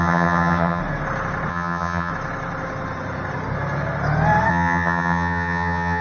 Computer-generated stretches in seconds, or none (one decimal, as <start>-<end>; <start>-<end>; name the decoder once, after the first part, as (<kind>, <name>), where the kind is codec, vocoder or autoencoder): 0.0-0.8 (vocoder, HiFi-GAN); 1.5-2.1; 4.5-6.0